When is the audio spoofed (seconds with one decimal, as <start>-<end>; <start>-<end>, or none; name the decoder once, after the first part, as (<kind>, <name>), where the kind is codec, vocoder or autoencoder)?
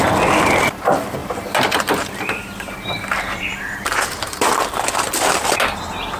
1.2-4.9 (vocoder, BigVGAN v2)